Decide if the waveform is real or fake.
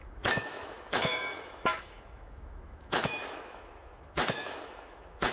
fake